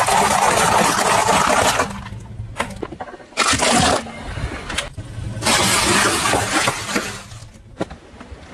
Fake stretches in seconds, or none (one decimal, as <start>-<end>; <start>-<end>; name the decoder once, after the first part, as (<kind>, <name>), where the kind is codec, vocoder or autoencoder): none